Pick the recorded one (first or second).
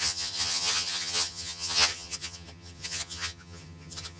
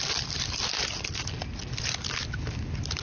second